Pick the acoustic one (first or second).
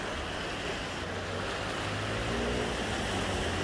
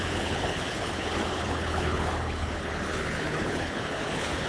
first